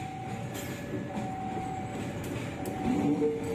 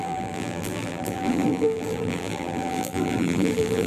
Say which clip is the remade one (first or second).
second